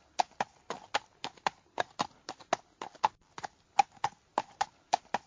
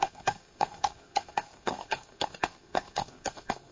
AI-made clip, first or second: second